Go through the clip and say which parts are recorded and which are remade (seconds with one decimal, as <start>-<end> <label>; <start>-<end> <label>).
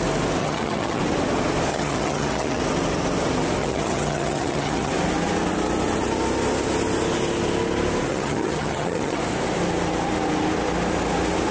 0.0-0.4 recorded; 0.4-1.0 remade; 1.0-1.7 recorded; 1.7-2.6 remade; 2.6-3.6 recorded; 3.6-4.9 remade; 4.9-8.1 recorded; 8.1-9.2 remade; 9.2-11.5 recorded